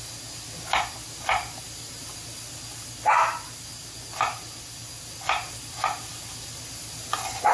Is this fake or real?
real